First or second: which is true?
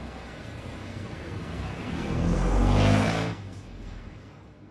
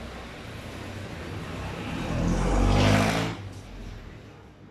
second